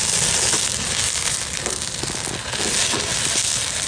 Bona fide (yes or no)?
yes